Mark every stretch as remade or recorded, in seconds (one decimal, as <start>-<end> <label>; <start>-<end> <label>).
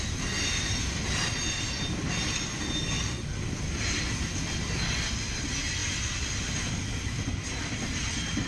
0.0-8.5 recorded